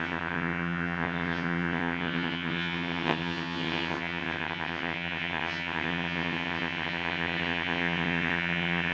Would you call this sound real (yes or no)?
no